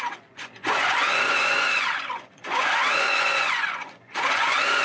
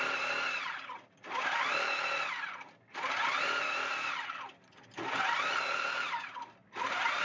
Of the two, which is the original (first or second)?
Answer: second